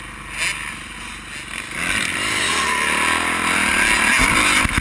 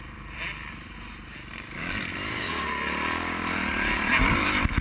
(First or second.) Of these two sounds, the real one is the first